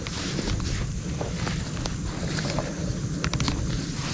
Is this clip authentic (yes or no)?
no